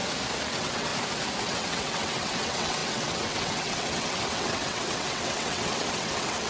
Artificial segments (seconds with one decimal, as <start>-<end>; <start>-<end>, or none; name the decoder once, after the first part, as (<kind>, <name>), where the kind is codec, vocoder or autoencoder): 0.5-0.9 (vocoder, WaveNeXt); 1.4-6.5